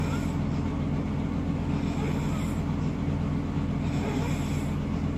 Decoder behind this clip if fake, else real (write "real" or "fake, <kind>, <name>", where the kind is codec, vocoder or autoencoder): real